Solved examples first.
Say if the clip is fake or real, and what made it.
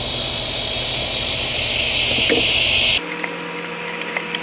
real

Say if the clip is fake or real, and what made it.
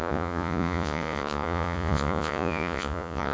fake, vocoder, Vocos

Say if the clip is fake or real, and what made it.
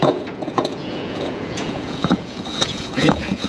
fake, vocoder, Vocos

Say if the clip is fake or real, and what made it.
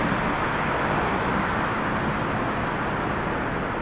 real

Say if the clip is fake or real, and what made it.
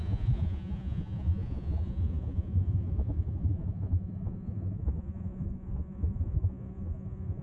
fake, vocoder, Vocos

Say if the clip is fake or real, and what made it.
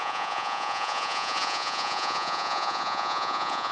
fake, vocoder, Vocos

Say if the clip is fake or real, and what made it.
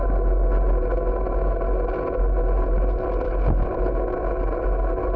real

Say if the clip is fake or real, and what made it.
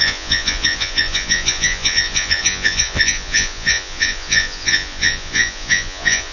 fake, vocoder, Vocos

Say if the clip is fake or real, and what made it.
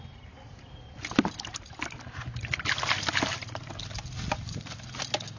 real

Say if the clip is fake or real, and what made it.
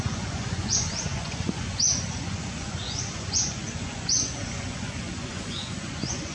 fake, vocoder, Vocos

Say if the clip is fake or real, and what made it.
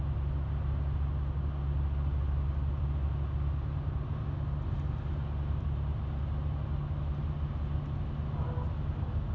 real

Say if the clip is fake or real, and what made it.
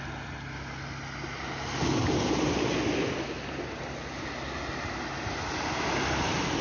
real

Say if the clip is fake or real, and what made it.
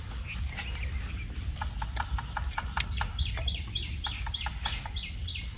real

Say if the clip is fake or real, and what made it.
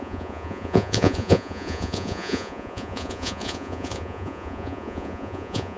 fake, vocoder, Vocos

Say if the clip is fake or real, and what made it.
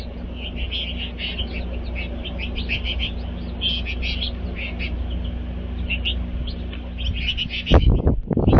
real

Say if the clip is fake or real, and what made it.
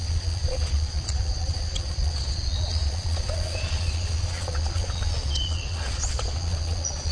fake, vocoder, Vocos